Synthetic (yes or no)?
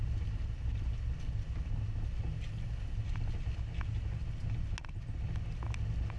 no